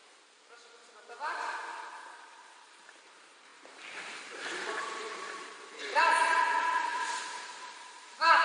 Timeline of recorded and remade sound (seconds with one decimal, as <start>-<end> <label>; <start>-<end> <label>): 0.0-2.0 recorded; 2.0-8.4 remade